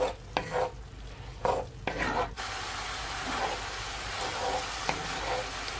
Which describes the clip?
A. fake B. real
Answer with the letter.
B